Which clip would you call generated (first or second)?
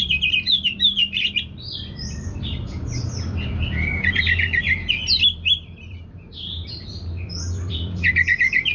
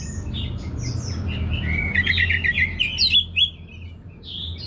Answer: first